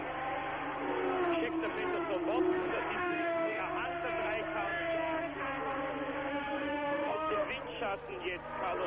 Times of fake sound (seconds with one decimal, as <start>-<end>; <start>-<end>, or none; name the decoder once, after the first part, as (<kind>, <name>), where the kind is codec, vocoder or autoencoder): 3.0-3.6 (autoencoder, DAC-VAE); 6.3-7.3